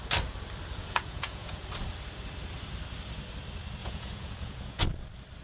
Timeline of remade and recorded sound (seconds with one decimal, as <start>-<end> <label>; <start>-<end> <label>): 0.0-0.8 recorded; 0.8-1.6 remade; 1.6-3.8 recorded; 3.8-4.8 remade; 4.8-5.4 recorded